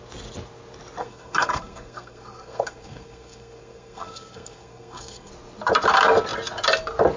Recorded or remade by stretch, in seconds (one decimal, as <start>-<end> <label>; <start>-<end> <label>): 0.0-1.0 recorded; 1.0-5.3 remade; 5.3-7.2 recorded

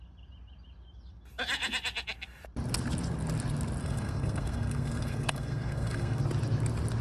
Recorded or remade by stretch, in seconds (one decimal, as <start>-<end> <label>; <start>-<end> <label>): 0.0-3.8 recorded; 3.8-6.2 remade; 6.2-7.0 recorded

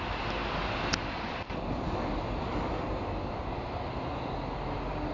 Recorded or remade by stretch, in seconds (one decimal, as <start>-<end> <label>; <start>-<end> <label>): 0.0-5.1 recorded

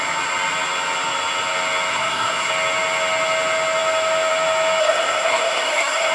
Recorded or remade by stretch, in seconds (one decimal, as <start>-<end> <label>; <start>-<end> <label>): 0.0-1.9 recorded; 1.9-2.5 remade; 2.5-4.8 recorded; 4.8-6.1 remade

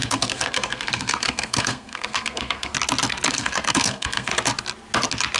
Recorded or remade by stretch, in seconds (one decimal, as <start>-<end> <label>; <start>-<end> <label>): 0.0-2.7 remade; 2.7-3.3 recorded; 3.3-4.3 remade; 4.3-5.4 recorded

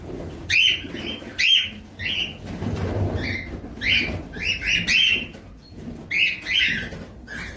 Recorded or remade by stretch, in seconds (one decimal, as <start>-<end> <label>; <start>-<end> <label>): 0.0-7.6 recorded

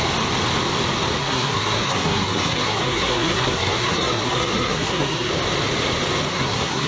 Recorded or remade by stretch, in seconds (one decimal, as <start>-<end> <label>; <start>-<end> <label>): 0.0-1.2 recorded; 1.2-5.3 remade; 5.3-6.3 recorded; 6.3-6.9 remade

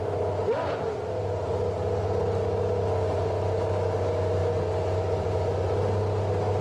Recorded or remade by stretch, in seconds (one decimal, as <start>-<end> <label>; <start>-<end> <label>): 0.0-6.6 recorded